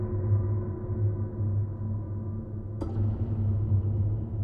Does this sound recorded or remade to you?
recorded